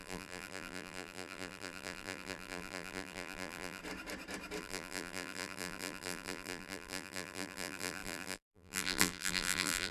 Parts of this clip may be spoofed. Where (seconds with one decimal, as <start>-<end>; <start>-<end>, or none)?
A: 0.0-3.8; 4.6-9.9

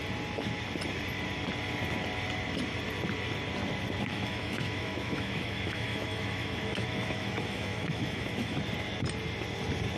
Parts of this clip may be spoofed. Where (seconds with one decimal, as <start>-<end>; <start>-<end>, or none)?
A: 4.1-8.6

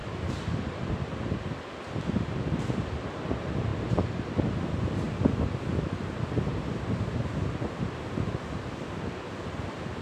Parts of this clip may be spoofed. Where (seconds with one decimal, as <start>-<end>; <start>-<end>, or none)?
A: none

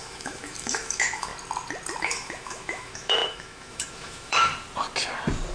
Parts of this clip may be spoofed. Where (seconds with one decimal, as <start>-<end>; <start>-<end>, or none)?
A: 0.0-1.3; 2.0-4.5

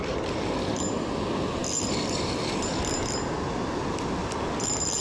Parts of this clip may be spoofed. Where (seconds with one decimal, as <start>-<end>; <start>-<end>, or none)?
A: none

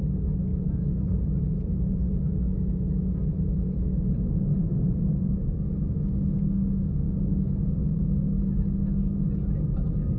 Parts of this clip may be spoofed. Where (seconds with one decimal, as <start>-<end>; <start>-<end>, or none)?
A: 0.5-2.2; 4.7-5.4